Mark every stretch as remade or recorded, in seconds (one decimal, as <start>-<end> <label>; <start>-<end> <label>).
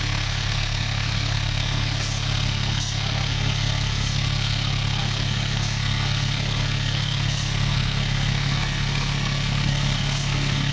0.0-10.7 remade